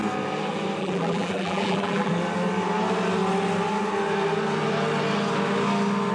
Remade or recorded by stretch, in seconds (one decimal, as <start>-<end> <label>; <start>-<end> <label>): 0.0-0.8 recorded; 0.8-2.1 remade; 2.1-6.1 recorded